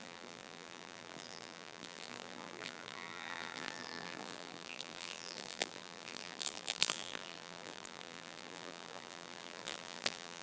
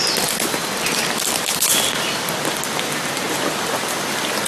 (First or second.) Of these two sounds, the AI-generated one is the first